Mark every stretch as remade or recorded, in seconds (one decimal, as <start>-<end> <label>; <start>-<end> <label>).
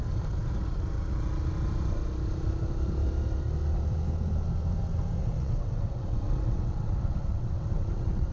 0.0-5.2 recorded; 5.2-8.3 remade